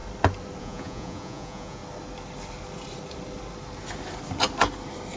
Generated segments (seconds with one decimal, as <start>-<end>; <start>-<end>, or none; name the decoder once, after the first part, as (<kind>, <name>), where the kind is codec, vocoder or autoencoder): 0.6-1.8 (vocoder, Vocos)